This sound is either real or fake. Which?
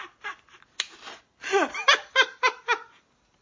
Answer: real